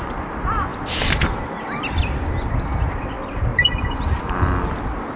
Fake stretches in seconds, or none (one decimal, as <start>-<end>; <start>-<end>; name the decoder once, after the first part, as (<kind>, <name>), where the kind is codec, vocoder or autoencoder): 3.5-4.2 (vocoder, BigVGAN v2)